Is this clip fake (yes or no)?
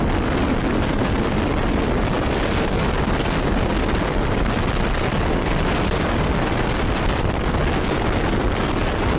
no